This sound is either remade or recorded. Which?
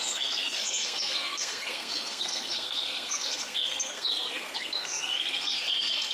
remade